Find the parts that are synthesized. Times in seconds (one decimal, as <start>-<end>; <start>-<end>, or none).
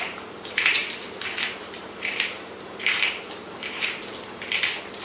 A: 0.0-4.1